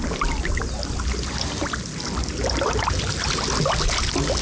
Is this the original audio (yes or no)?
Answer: yes